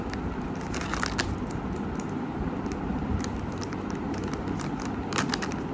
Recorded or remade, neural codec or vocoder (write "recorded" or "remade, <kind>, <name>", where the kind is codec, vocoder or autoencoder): recorded